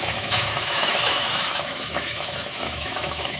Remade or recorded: remade